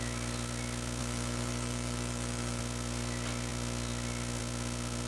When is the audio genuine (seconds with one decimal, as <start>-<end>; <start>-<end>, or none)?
0.0-1.0; 2.6-5.1